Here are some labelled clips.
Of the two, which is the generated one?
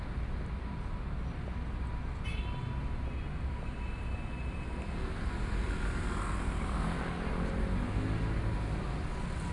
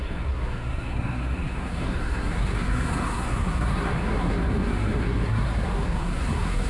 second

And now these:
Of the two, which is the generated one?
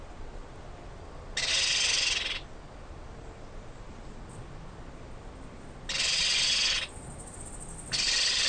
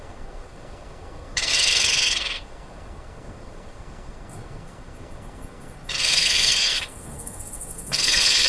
second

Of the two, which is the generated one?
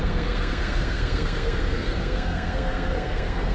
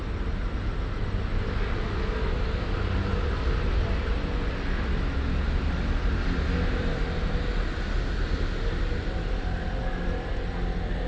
first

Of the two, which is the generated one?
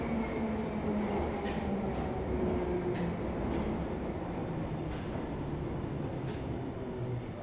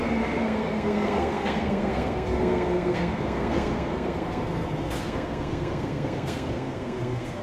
second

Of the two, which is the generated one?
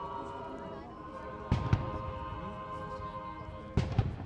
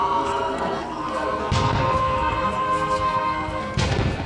second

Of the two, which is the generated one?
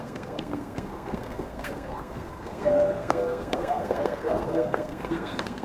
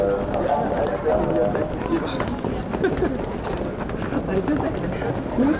first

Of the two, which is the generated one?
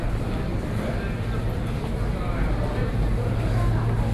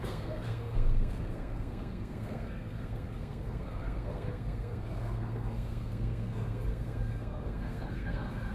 second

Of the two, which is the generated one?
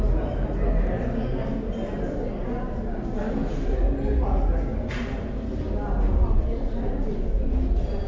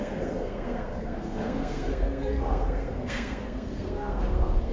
second